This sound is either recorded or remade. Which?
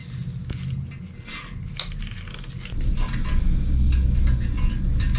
recorded